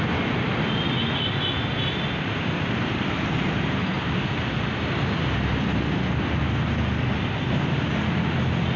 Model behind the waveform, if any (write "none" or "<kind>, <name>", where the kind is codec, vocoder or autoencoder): none